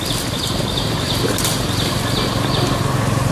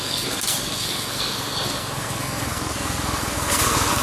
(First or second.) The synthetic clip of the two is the second